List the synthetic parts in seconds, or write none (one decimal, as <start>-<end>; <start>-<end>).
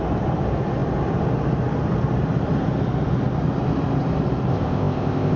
4.5-5.4